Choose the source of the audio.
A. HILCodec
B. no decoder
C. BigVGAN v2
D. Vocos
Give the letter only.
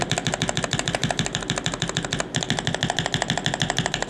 B